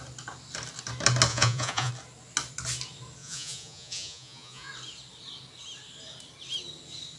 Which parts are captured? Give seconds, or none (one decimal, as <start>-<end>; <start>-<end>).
0.0-1.3; 1.9-3.2; 4.7-7.2